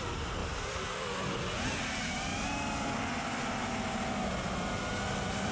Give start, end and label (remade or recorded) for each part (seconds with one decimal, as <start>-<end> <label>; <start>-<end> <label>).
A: 0.0-5.5 recorded